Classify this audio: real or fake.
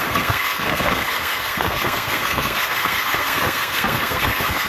fake